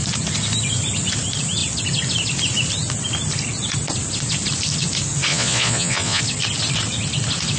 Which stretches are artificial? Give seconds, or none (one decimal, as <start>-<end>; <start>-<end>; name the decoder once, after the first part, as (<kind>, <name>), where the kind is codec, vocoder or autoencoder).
5.3-6.2 (vocoder, Vocos)